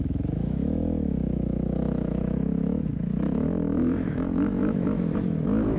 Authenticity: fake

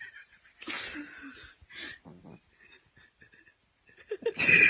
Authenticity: real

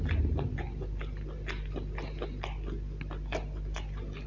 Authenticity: real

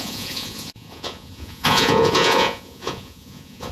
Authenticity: fake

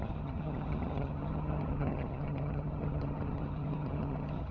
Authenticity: fake